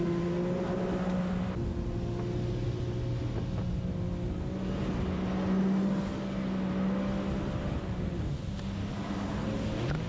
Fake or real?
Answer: real